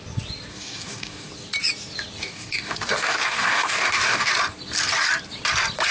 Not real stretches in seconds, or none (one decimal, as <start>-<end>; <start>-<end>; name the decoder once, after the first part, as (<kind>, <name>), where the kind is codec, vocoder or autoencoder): 0.5-1.3 (codec, DAC); 2.2-4.3